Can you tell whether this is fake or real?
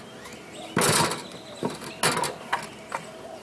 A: real